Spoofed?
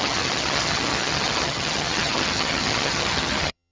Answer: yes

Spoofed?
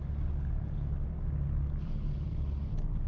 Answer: no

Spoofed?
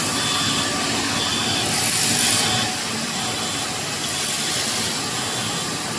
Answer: no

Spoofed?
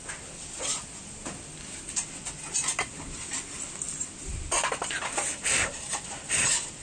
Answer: no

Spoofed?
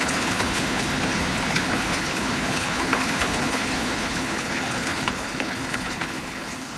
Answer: yes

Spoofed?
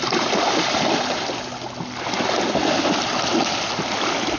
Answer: no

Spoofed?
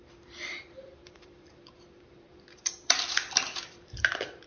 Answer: yes